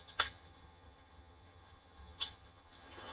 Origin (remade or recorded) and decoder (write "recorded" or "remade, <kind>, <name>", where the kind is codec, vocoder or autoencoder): remade, vocoder, HiFi-GAN